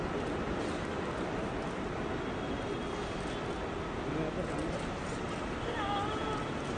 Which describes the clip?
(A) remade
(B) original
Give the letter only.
B